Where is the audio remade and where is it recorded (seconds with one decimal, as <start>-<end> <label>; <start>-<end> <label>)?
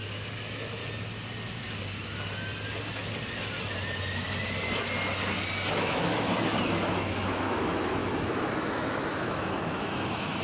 0.0-0.8 remade; 0.8-5.7 recorded; 5.7-6.3 remade; 6.3-6.9 recorded; 6.9-10.4 remade